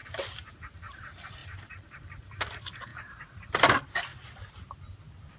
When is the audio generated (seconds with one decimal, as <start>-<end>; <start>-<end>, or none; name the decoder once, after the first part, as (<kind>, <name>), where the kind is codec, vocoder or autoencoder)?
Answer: 0.0-0.5 (vocoder, BigVGAN v2); 1.4-2.0; 2.9-3.5